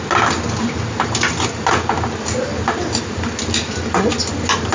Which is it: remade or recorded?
recorded